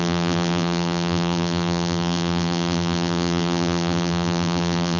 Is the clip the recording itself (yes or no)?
no